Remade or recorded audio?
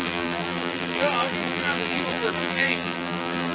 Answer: remade